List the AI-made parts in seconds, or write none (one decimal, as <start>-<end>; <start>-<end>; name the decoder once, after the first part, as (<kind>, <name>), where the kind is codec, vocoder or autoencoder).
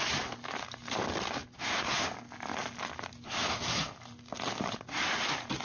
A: none